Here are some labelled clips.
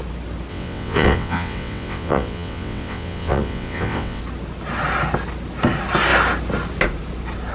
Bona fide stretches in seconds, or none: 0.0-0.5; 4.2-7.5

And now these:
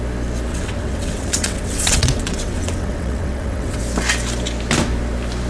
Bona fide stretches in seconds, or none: 0.0-0.5; 3.8-5.5

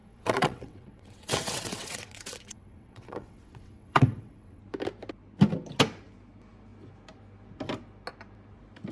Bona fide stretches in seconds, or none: 4.6-8.9

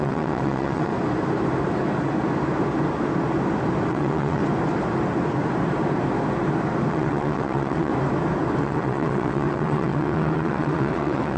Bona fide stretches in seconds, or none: 0.9-3.9; 4.4-6.9; 7.9-8.6

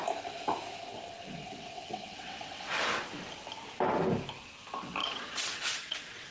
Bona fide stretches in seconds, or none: 0.0-1.4; 2.8-5.0